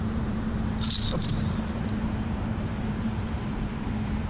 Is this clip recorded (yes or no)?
no